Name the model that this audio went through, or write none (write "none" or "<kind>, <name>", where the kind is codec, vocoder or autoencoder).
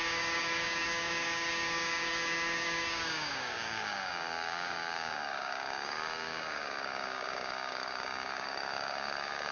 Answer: codec, DAC